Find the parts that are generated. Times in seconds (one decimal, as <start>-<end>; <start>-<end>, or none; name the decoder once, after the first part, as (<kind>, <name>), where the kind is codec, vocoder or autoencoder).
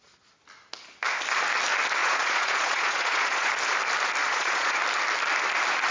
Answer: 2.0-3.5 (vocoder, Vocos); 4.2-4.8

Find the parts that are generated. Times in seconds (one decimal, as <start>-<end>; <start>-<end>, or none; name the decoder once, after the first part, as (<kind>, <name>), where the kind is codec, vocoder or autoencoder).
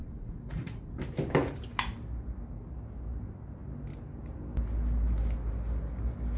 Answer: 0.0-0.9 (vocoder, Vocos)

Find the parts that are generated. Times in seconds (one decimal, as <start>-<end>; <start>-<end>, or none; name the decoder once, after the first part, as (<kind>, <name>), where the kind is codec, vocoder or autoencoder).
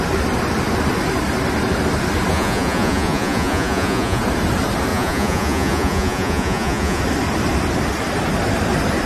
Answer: 2.3-4.2 (vocoder, Vocos); 4.9-7.0